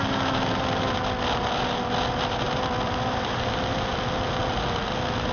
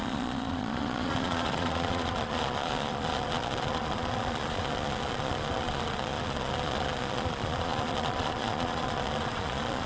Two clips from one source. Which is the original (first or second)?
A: first